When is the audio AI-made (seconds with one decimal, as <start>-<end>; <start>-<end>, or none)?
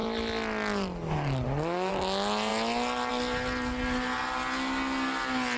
none